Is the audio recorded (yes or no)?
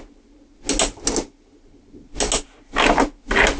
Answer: yes